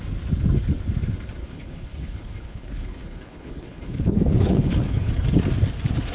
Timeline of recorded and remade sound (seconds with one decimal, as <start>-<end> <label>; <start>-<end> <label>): 0.0-1.4 recorded; 1.4-5.1 remade; 5.1-6.1 recorded